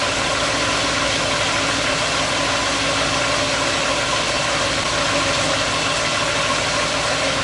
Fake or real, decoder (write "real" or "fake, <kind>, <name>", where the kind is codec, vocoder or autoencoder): real